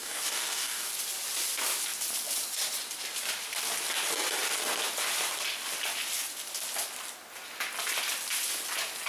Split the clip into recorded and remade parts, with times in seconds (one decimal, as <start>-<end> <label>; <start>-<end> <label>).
0.0-0.9 remade; 0.9-9.1 recorded